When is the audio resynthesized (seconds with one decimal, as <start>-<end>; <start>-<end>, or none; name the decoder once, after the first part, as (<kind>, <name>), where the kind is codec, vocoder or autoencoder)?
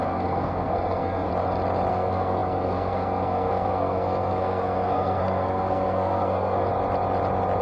0.0-1.3 (codec, SNAC); 1.9-6.7